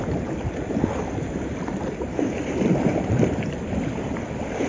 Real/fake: real